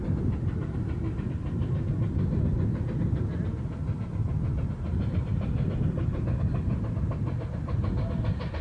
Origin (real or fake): real